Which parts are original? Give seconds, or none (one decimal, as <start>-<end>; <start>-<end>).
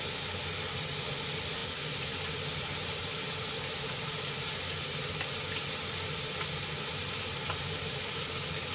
0.0-8.7